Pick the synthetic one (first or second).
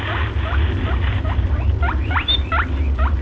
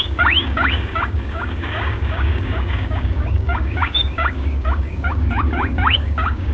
second